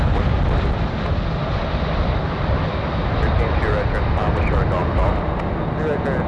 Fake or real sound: real